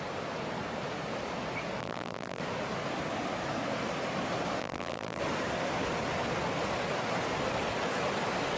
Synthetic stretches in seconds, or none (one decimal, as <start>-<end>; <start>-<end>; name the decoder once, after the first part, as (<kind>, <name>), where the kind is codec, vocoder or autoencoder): 1.8-2.4 (vocoder, BigVGAN v2); 4.6-5.2

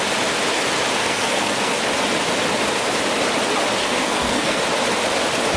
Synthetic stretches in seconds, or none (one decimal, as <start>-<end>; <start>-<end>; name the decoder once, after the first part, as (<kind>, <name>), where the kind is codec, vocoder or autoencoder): 1.0-1.8 (codec, SNAC); 3.8-4.6

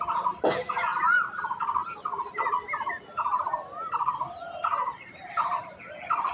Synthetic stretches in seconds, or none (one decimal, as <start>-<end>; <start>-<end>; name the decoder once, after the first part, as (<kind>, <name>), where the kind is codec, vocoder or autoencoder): none

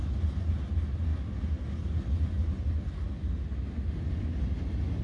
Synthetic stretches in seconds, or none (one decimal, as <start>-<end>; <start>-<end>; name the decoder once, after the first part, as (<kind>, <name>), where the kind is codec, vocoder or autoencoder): none

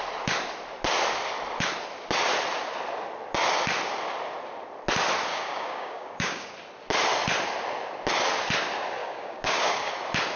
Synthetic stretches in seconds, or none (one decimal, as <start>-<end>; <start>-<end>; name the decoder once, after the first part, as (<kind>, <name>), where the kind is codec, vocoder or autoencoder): 5.3-6.5 (codec, DAC); 9.0-9.9

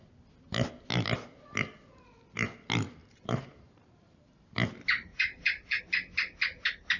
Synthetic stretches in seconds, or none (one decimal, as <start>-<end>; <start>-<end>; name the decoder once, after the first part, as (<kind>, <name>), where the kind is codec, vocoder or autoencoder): 3.0-4.3 (vocoder, BigVGAN v2); 5.1-5.8

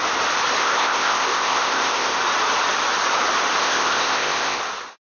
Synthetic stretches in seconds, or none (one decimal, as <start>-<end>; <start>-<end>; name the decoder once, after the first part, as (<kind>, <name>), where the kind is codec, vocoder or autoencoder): 0.6-2.2 (codec, ZipCodec); 3.6-4.6